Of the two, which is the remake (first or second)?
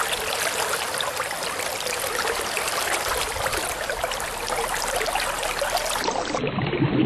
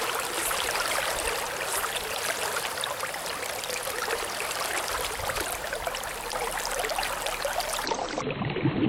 second